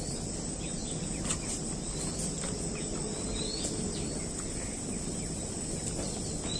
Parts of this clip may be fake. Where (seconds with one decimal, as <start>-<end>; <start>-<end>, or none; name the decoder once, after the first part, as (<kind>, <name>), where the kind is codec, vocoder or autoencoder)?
none